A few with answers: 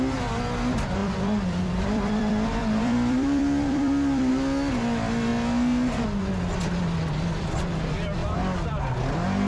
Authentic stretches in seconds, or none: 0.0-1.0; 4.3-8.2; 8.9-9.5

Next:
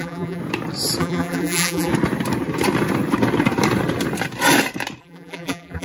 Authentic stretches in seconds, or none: 0.4-1.0; 1.9-5.0

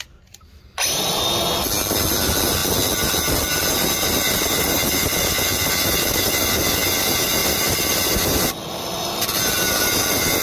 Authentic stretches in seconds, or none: 0.0-7.4; 8.0-10.4

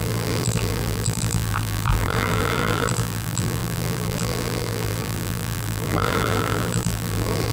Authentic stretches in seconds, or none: none

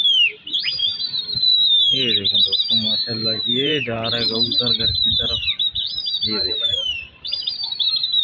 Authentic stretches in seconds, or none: 0.0-3.2; 4.8-6.4

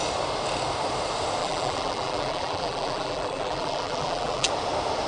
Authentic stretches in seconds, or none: 0.0-1.4; 4.5-5.1

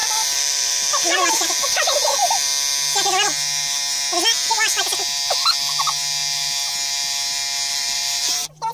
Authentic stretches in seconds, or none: 2.5-7.7